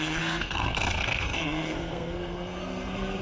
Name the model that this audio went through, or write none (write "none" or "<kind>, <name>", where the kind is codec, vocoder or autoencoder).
codec, SNAC